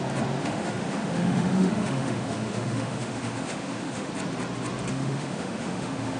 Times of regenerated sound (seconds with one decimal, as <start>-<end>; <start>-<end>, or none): 0.4-4.1; 4.9-6.2